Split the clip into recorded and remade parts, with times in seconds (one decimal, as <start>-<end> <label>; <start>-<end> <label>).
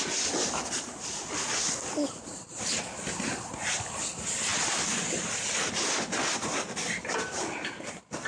0.0-8.3 recorded